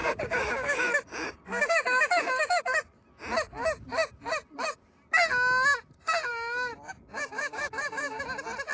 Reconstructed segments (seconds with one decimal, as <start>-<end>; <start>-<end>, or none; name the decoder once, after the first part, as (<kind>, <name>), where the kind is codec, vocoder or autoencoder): 0.0-2.7 (codec, DAC); 6.3-8.2